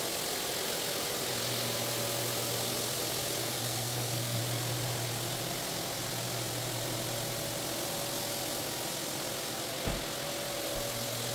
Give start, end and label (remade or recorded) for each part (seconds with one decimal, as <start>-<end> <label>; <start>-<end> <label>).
0.0-3.4 recorded; 3.4-4.4 remade; 4.4-11.3 recorded